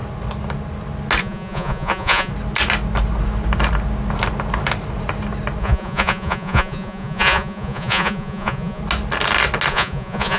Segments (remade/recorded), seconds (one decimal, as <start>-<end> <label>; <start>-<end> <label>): 0.0-1.2 recorded; 1.2-2.3 remade; 2.3-5.6 recorded; 5.6-8.8 remade; 8.8-9.7 recorded; 9.7-10.4 remade